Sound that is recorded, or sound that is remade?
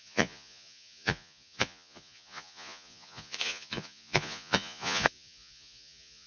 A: remade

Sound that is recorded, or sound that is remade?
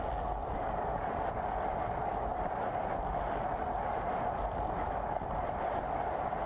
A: recorded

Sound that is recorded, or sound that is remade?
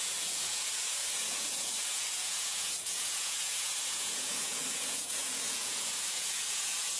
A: remade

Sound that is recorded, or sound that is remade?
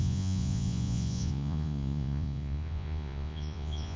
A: remade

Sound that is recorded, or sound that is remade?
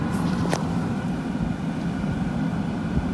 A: recorded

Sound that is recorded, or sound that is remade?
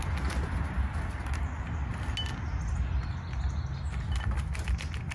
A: recorded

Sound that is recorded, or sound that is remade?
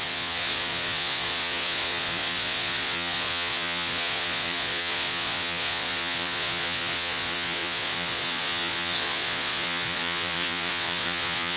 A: remade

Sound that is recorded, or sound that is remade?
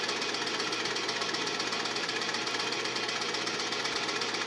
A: recorded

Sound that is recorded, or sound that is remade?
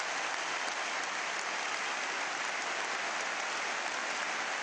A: recorded